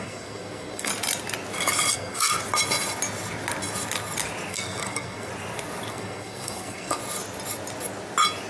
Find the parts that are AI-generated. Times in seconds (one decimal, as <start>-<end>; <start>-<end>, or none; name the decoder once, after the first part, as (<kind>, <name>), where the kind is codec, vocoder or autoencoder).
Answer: 0.0-0.9 (codec, SNAC); 1.9-2.3; 4.5-5.3; 5.9-7.0